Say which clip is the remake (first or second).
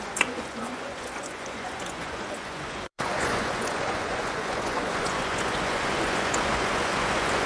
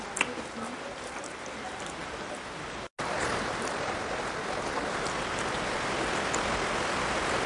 first